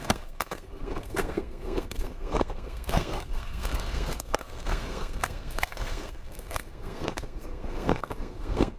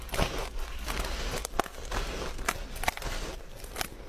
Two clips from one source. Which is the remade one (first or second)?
first